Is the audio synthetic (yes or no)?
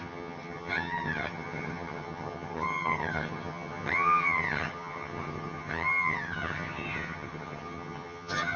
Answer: yes